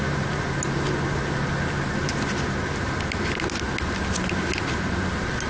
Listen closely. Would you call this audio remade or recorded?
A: recorded